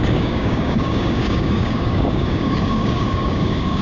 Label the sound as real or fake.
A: fake